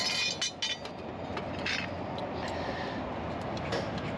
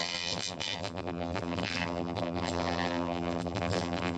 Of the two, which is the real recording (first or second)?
first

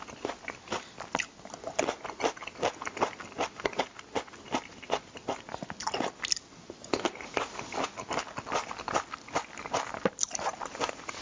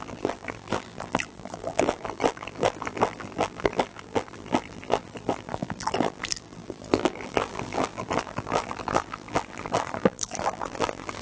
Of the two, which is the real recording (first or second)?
first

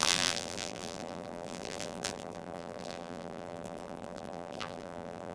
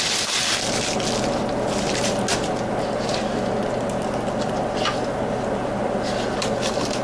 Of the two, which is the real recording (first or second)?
second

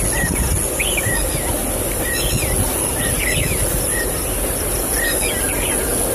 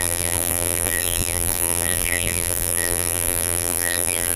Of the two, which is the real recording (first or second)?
first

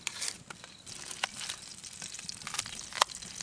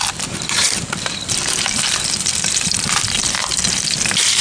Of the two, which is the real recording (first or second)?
first